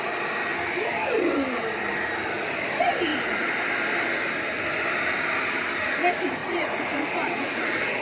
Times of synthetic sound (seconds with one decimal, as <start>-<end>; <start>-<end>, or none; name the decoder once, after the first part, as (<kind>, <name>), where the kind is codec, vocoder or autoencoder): 3.1-3.7 (vocoder, Vocos); 6.4-8.0